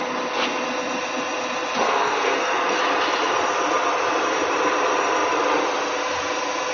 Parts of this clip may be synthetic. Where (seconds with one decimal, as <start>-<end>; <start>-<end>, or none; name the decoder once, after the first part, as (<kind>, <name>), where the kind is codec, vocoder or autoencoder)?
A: 1.8-2.8 (codec, SNAC)